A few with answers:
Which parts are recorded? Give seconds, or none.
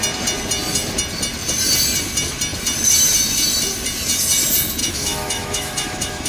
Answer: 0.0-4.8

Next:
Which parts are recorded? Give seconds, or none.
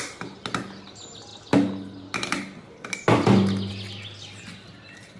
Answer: 0.0-5.2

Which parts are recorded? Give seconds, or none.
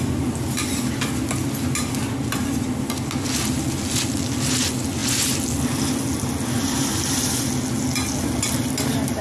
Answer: 0.0-9.2